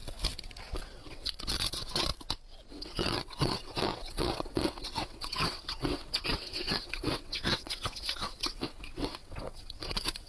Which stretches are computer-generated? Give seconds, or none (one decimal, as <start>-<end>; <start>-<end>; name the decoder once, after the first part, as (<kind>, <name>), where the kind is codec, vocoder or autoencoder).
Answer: 0.8-2.1 (vocoder, WaveNeXt); 2.7-10.3